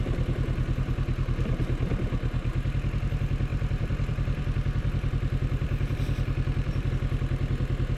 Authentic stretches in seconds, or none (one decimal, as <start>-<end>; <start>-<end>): 0.0-3.5; 6.9-8.0

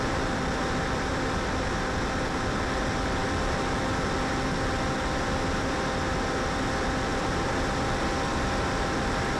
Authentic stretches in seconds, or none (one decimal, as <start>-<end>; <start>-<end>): 0.0-7.1; 8.7-9.4

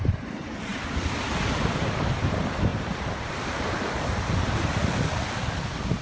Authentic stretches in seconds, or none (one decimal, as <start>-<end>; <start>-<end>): 4.8-6.0

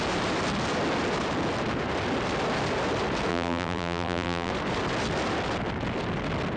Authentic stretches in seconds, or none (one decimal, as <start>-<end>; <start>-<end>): 0.0-3.3; 4.5-6.6

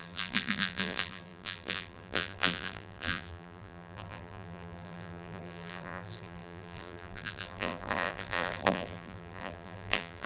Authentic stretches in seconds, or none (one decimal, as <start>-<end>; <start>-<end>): none

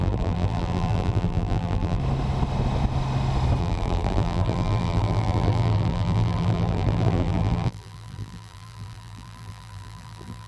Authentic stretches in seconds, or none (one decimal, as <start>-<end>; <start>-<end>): 2.0-3.6

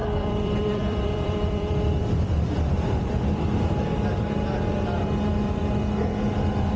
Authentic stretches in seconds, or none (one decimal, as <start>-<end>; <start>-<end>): 4.1-6.8